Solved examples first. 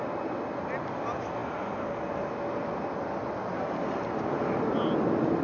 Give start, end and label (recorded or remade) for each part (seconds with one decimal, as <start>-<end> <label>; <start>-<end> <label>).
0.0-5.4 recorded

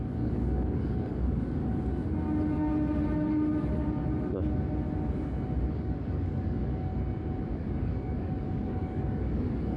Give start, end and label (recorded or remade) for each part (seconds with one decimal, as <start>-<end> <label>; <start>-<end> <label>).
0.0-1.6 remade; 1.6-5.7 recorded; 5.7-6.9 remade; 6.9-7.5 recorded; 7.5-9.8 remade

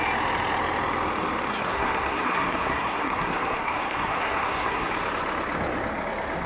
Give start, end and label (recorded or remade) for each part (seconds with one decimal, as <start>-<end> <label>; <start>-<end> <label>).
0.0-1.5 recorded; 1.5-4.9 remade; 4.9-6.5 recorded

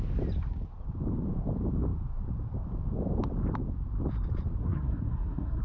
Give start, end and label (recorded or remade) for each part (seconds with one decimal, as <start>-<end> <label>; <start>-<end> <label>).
0.0-4.6 recorded; 4.6-5.6 remade

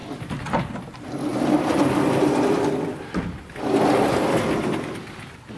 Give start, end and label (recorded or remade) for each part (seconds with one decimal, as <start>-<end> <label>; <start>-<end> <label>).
0.0-5.6 recorded

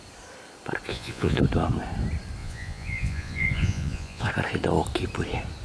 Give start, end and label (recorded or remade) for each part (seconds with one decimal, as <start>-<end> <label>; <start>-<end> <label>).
0.0-0.9 recorded; 0.9-1.4 remade; 1.4-2.4 recorded; 2.4-4.3 remade; 4.3-5.6 recorded